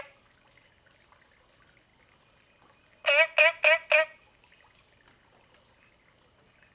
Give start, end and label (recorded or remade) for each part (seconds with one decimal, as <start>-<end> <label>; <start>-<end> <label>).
0.0-6.7 recorded